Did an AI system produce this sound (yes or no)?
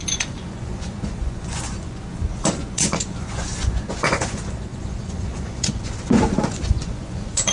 yes